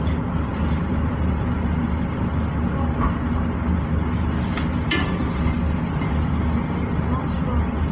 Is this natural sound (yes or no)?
yes